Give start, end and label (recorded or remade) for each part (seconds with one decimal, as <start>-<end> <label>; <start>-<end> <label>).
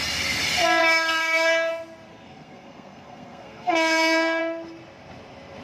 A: 0.0-0.8 recorded; 0.8-1.7 remade; 1.7-2.1 recorded; 2.1-4.4 remade; 4.4-5.6 recorded